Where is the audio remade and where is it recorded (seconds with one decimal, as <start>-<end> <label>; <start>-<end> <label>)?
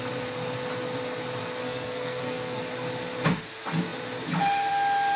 0.0-1.6 recorded; 1.6-2.6 remade; 2.6-5.2 recorded